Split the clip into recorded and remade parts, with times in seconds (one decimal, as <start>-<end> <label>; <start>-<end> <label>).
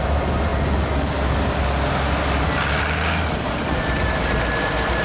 0.0-0.5 remade; 0.5-3.5 recorded; 3.5-5.0 remade